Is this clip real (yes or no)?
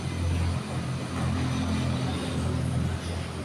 yes